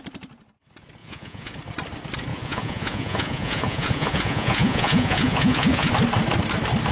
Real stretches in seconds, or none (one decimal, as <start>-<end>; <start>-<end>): 0.0-1.0; 1.5-2.3; 5.9-6.9